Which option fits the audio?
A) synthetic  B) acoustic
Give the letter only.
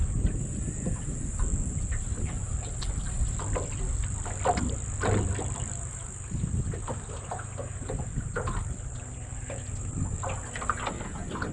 B